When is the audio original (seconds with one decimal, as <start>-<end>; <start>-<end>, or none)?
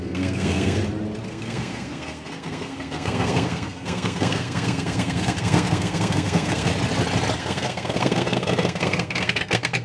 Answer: 0.8-1.3; 6.7-7.4